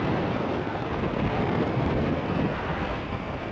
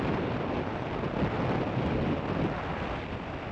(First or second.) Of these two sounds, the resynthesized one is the first